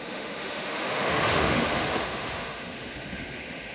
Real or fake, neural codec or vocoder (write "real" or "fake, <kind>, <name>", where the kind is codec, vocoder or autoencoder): fake, autoencoder, DAC-VAE